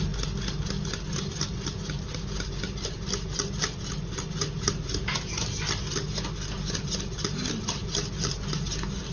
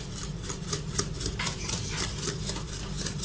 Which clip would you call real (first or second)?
first